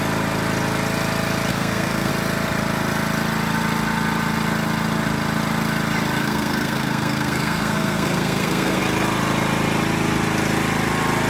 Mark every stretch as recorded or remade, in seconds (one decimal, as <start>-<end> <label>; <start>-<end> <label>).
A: 0.0-1.5 recorded; 1.5-2.1 remade; 2.1-6.2 recorded; 6.2-8.8 remade; 8.8-11.3 recorded